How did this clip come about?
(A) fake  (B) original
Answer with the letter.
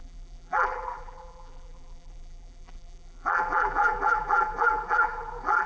A